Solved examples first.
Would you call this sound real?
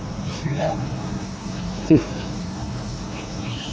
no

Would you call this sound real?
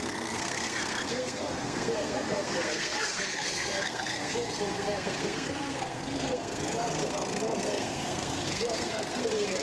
no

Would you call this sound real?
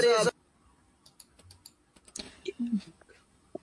yes